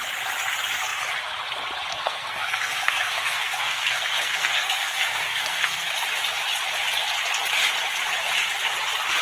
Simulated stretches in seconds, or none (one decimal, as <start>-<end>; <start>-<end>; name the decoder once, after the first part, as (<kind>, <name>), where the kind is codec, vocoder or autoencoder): 1.9-5.9 (codec, SNAC)